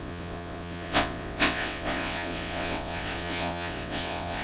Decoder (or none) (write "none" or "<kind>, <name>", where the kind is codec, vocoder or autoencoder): vocoder, WaveNeXt